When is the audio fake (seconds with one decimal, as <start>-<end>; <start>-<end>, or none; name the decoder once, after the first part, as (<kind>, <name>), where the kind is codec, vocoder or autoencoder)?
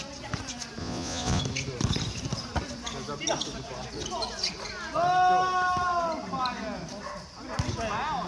0.8-1.4 (vocoder, Vocos)